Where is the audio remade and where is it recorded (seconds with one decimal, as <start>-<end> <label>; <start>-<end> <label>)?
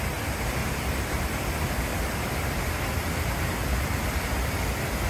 0.0-0.6 recorded; 0.6-1.3 remade; 1.3-1.9 recorded; 1.9-2.7 remade; 2.7-5.1 recorded